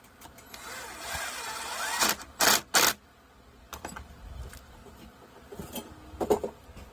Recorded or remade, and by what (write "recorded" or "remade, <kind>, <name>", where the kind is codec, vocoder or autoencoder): recorded